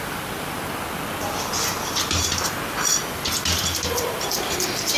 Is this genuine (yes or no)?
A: yes